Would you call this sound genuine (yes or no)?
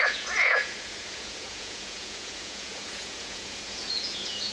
no